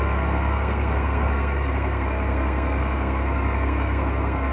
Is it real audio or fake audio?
fake